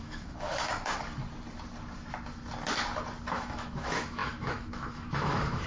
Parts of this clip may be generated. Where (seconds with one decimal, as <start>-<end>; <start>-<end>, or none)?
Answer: 0.0-0.7; 3.3-5.7